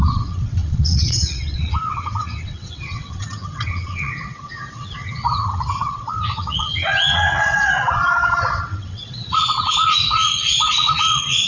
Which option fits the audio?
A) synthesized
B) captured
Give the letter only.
A